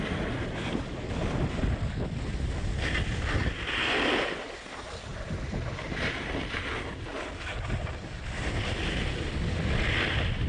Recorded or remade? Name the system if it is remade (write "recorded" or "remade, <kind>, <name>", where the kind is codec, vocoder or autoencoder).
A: recorded